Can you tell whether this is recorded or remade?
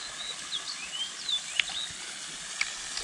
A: recorded